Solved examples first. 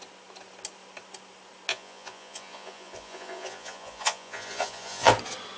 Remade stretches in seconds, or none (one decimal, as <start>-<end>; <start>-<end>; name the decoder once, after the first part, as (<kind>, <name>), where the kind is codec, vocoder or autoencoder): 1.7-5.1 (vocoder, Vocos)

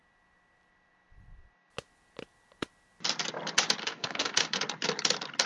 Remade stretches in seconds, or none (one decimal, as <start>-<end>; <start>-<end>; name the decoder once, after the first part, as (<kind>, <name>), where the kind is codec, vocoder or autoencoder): 3.8-4.6 (autoencoder, DAC-VAE)

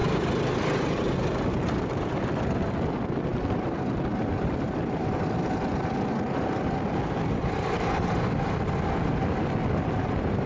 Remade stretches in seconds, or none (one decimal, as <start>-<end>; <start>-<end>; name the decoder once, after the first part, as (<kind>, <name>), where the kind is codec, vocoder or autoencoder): none